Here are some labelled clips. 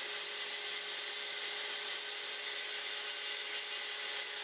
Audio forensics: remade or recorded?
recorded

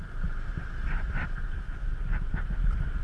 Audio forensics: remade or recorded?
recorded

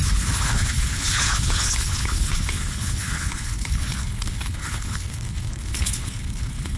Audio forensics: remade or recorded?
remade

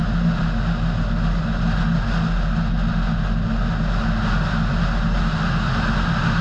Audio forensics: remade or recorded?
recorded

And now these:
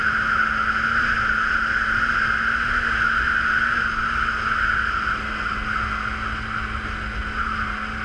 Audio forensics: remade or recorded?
recorded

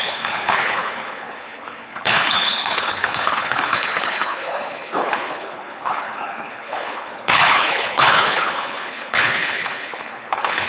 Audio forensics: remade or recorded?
remade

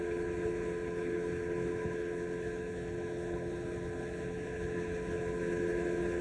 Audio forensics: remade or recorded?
remade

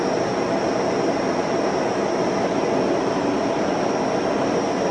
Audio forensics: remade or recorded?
recorded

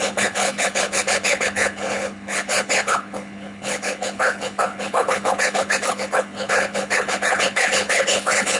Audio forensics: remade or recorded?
remade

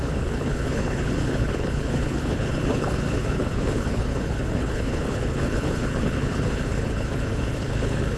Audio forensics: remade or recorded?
remade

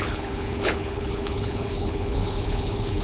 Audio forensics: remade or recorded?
remade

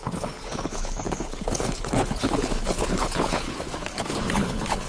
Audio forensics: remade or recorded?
remade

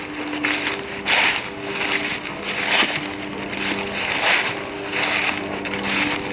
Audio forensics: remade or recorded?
recorded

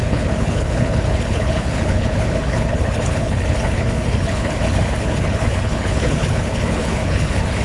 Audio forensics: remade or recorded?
remade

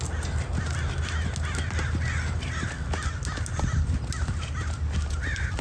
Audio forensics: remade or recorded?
recorded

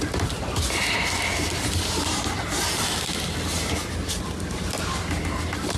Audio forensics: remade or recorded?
recorded